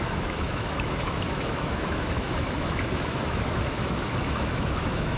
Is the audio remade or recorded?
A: remade